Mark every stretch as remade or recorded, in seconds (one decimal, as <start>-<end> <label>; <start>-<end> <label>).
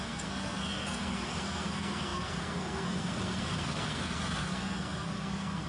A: 0.0-5.7 remade